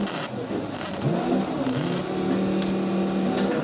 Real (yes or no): yes